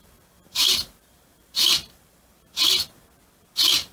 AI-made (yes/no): no